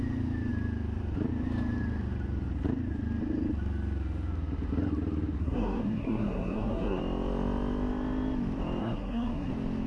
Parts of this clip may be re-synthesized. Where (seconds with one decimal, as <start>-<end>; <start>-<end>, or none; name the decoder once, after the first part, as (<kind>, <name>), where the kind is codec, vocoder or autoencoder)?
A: 5.4-7.0 (codec, SNAC); 8.8-9.5